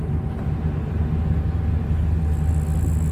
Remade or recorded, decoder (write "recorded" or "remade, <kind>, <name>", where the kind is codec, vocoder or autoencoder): recorded